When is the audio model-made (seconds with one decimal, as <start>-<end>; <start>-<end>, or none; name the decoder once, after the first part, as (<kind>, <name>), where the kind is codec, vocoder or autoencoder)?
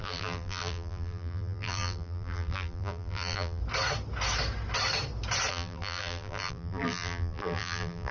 0.0-3.6 (vocoder, BigVGAN v2); 5.5-8.1